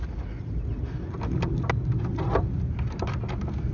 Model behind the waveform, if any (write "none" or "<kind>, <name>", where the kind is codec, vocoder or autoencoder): none